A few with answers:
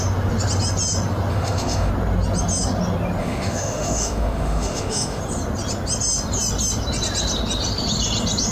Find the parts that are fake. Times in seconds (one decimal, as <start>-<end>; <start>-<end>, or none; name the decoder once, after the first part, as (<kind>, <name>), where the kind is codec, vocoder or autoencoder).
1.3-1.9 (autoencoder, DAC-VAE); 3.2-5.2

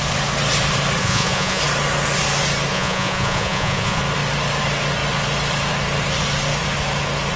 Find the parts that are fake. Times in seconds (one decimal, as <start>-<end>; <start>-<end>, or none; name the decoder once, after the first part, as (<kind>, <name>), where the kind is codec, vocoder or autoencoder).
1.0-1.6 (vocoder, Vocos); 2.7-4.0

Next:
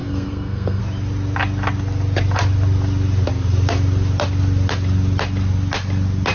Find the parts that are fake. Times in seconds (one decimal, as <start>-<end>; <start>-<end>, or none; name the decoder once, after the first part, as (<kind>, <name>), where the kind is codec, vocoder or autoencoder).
0.0-0.8 (codec, SNAC)